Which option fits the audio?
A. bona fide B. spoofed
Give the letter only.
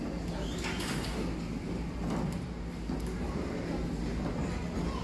A